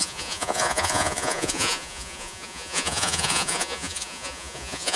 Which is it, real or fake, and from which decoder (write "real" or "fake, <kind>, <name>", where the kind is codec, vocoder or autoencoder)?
fake, vocoder, Vocos